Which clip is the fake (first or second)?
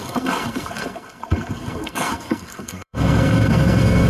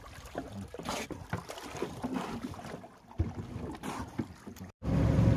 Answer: first